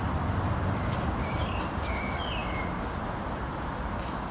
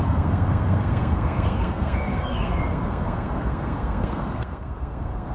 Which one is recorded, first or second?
first